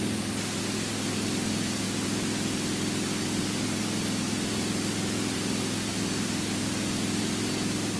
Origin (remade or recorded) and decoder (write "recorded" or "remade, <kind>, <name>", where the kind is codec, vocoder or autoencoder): recorded